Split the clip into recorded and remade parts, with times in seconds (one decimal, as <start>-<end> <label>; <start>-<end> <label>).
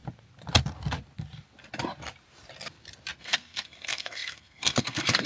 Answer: 0.0-3.2 recorded; 3.2-5.3 remade